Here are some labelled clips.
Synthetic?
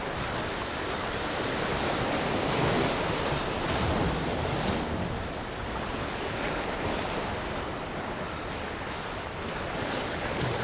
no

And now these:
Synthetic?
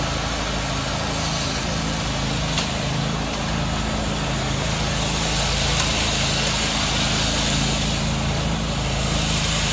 no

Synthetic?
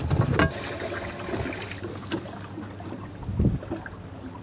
no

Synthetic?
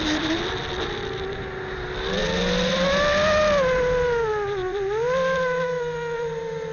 yes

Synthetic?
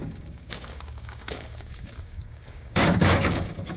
yes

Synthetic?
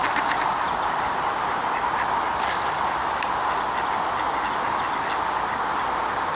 no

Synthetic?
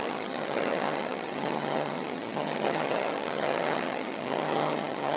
yes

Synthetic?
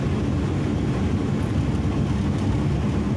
no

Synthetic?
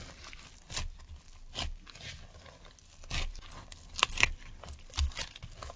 no